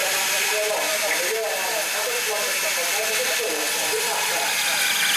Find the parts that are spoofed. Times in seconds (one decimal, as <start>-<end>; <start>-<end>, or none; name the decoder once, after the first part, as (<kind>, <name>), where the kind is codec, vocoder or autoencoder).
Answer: none